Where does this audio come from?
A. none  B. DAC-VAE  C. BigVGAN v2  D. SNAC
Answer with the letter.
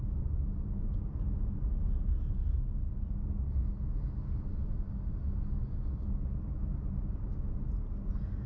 A